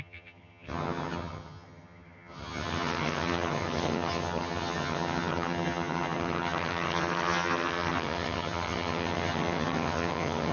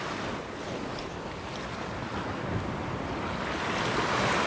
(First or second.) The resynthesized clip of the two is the first